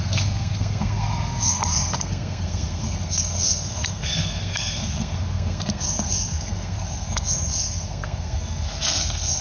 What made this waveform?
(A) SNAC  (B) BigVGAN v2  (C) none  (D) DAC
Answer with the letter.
A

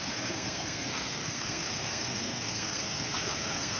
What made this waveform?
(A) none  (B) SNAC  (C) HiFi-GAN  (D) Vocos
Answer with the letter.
B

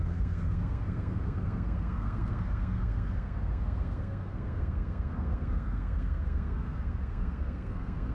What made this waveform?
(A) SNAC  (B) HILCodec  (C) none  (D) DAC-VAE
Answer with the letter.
A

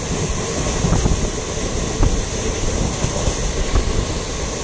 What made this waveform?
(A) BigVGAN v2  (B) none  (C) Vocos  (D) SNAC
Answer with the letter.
B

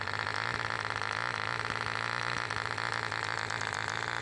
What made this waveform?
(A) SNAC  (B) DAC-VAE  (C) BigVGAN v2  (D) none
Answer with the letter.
D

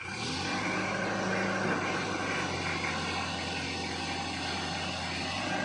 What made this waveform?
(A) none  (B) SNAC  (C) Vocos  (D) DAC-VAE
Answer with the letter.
A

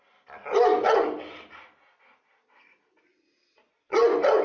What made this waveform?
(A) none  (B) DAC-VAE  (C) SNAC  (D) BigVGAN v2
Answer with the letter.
A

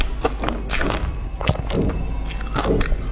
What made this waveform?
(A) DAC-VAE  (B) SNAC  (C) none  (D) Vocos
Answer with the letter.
C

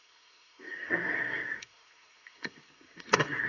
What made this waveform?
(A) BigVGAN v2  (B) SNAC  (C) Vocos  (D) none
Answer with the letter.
B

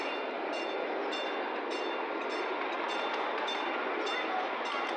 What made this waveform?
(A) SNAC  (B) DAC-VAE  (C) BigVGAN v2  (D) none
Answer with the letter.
D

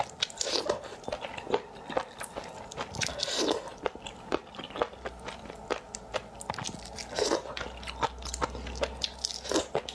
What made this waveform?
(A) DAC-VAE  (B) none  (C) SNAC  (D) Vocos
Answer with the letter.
B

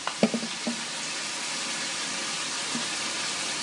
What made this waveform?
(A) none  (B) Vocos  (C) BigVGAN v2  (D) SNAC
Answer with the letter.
A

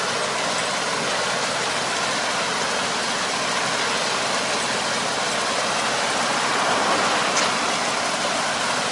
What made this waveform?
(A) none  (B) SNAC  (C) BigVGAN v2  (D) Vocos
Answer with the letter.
A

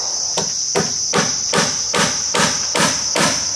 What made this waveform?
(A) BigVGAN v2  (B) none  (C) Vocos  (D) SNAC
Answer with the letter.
B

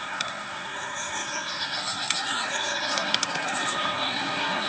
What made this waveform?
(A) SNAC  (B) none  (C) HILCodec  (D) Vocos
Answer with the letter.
A